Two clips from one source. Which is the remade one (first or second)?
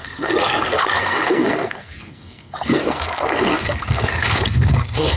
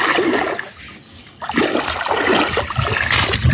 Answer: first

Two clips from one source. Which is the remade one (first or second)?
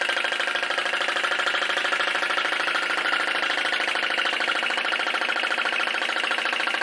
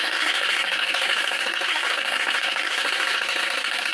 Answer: second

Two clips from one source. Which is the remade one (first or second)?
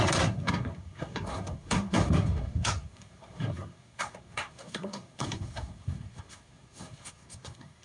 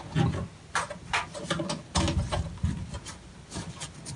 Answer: first